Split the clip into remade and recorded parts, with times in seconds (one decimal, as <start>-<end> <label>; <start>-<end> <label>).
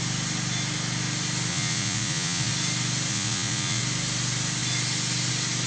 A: 0.0-1.5 recorded; 1.5-2.5 remade; 2.5-3.1 recorded; 3.1-3.8 remade; 3.8-5.7 recorded